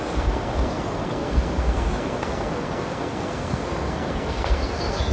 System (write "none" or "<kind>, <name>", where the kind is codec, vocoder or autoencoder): codec, SNAC